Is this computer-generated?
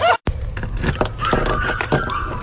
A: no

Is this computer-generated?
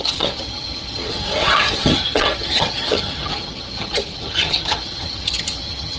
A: yes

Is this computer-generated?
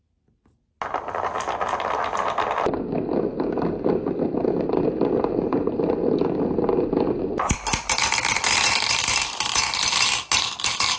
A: no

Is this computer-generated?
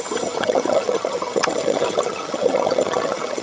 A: yes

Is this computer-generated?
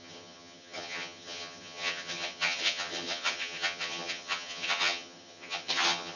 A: yes